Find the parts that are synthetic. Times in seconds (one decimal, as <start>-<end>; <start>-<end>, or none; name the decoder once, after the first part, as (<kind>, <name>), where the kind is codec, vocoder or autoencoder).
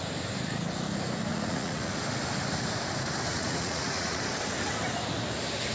1.3-1.9 (vocoder, Vocos); 3.3-4.2